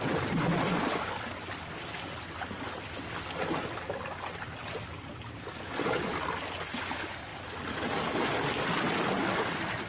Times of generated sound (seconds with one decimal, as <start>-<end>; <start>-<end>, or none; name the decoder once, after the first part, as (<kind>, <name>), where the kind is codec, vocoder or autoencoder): none